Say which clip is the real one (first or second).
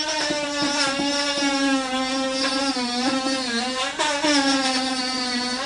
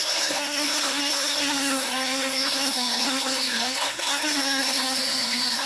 first